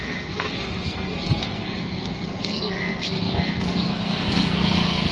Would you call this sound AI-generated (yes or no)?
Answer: yes